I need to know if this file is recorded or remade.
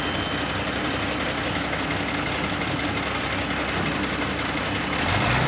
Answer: recorded